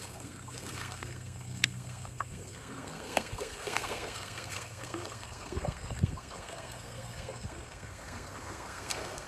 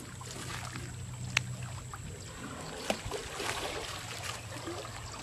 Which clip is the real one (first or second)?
second